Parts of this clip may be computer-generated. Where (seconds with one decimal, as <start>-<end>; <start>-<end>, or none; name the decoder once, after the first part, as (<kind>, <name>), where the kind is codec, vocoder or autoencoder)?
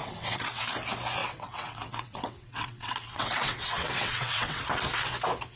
0.0-0.7 (vocoder, WaveNeXt); 1.2-4.6